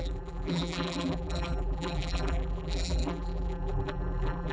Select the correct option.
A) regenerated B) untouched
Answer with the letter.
A